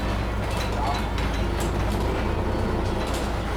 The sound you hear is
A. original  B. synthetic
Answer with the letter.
A